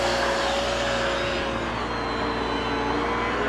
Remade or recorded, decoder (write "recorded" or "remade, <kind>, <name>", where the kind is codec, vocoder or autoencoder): recorded